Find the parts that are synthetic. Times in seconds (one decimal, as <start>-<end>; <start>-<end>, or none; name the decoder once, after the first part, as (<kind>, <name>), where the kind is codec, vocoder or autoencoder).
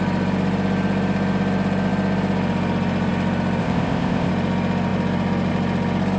3.6-4.3 (codec, ZipCodec)